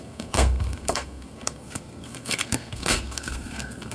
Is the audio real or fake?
fake